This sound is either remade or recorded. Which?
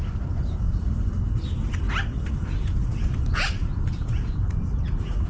recorded